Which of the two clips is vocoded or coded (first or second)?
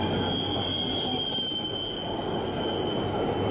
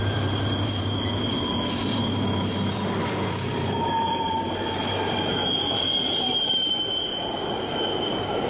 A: second